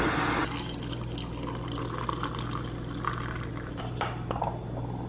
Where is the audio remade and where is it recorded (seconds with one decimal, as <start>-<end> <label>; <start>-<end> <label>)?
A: 0.0-5.1 recorded